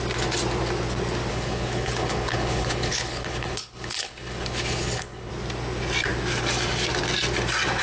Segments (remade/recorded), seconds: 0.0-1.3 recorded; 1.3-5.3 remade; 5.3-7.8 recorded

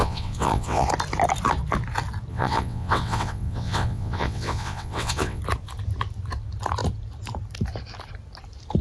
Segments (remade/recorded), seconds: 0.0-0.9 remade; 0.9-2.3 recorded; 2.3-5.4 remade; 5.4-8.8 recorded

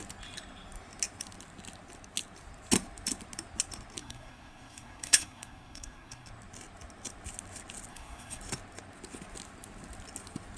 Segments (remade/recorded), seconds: 0.0-4.0 recorded; 4.0-6.3 remade; 6.3-7.9 recorded; 7.9-8.4 remade; 8.4-10.6 recorded

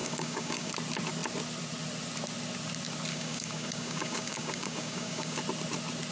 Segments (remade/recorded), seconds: 0.0-0.7 remade; 0.7-3.1 recorded; 3.1-5.4 remade; 5.4-6.1 recorded

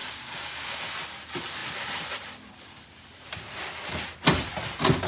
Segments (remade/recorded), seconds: 0.0-0.8 remade; 0.8-5.1 recorded